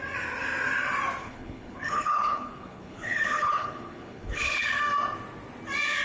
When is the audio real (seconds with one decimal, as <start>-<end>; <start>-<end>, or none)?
0.0-1.2; 4.8-6.0